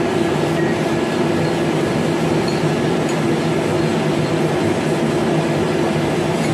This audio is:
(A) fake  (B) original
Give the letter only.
B